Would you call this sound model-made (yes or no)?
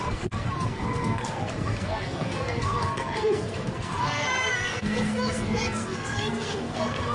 yes